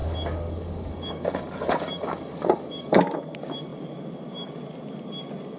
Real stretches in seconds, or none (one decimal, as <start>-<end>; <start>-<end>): 3.0-5.6

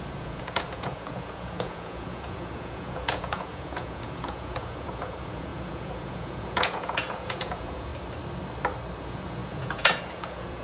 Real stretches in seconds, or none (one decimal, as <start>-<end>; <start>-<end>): 7.9-9.0

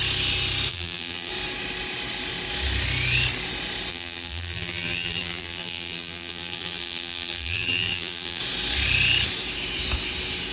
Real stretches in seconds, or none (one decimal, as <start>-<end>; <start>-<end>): 0.0-0.7; 1.3-3.9; 8.4-10.5